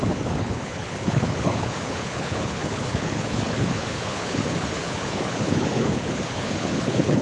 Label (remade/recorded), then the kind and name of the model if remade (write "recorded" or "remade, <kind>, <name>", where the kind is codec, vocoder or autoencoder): remade, codec, HILCodec